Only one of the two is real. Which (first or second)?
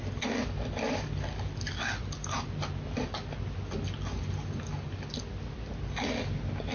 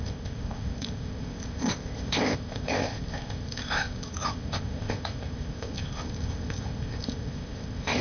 first